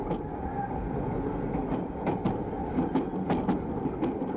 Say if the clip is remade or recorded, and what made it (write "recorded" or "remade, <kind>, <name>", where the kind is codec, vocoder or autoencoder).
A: recorded